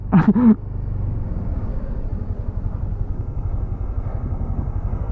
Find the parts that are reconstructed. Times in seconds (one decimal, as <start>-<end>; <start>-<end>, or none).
3.1-5.1